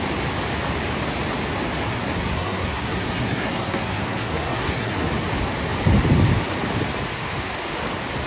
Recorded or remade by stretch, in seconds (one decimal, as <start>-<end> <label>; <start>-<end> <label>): 0.0-1.9 recorded; 1.9-5.1 remade; 5.1-8.3 recorded